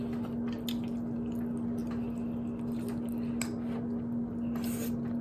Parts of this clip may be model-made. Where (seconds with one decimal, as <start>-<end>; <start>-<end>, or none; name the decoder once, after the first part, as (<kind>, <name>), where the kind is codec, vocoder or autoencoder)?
none

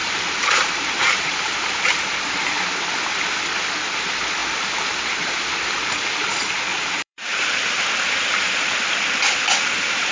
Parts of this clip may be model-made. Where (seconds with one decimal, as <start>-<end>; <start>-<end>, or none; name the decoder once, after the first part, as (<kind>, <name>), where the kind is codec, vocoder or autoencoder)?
0.0-2.3 (vocoder, BigVGAN v2); 6.7-7.5

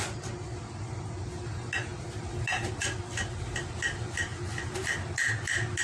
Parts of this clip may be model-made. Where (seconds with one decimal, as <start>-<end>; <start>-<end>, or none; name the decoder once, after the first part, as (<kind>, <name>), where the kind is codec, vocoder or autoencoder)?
none

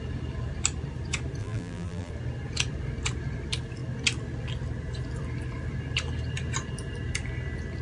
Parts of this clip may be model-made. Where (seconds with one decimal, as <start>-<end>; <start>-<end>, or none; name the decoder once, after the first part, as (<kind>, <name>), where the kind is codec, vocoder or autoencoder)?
1.4-2.1 (vocoder, BigVGAN v2)

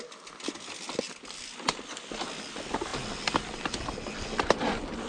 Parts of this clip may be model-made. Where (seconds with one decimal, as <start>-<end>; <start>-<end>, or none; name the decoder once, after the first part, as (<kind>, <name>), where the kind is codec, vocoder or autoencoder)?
none

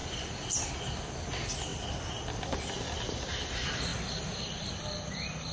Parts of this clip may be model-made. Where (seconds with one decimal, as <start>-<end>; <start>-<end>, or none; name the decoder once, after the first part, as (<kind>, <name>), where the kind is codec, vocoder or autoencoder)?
0.0-0.7 (vocoder, BigVGAN v2)